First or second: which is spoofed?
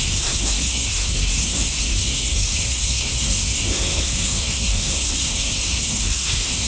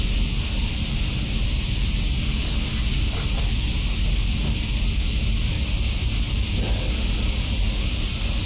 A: first